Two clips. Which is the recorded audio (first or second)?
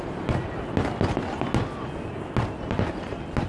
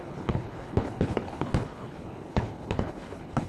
first